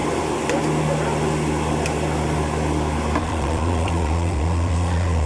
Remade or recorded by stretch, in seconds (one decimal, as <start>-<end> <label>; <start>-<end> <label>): 0.0-3.2 recorded; 3.2-5.3 remade